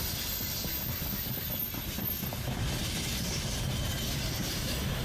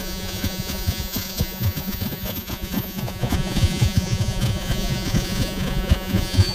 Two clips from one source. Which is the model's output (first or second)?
second